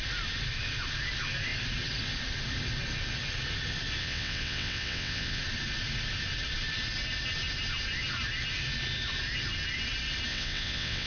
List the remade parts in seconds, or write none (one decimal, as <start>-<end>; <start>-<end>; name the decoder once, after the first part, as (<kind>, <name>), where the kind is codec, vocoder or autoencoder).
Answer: 4.0-5.4 (vocoder, WaveNeXt); 10.3-11.1